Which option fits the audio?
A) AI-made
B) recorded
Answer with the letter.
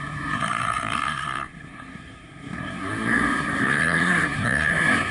A